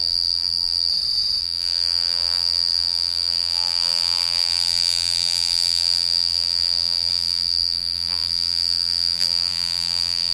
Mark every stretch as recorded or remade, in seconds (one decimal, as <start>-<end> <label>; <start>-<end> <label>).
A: 0.0-0.9 remade; 0.9-1.4 recorded; 1.4-10.3 remade